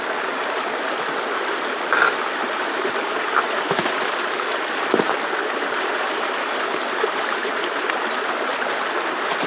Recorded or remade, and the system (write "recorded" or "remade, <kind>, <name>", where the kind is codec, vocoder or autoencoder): recorded